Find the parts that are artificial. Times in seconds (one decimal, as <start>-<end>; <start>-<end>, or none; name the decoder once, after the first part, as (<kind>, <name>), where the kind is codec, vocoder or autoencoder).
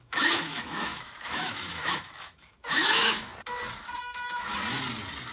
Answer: 0.0-3.3 (autoencoder, DAC-VAE); 4.0-4.5